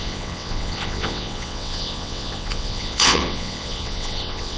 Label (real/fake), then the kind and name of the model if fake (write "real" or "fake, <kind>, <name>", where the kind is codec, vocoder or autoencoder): fake, vocoder, WaveNeXt